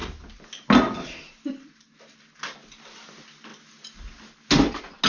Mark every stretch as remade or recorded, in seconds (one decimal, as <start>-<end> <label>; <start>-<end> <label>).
0.0-5.1 recorded